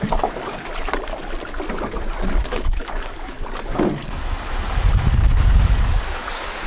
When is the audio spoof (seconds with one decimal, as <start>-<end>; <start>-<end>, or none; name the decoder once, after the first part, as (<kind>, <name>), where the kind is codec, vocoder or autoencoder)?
0.0-0.7 (codec, DAC); 2.4-4.0; 5.1-6.7